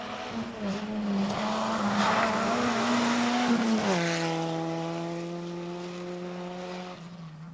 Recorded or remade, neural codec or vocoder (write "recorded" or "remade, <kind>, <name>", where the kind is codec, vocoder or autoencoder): recorded